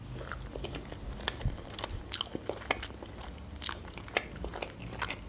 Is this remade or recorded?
recorded